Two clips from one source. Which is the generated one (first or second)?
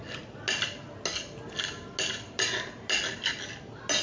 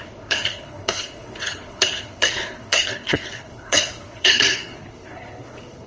second